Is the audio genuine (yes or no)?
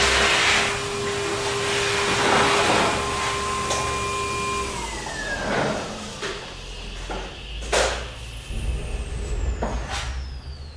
yes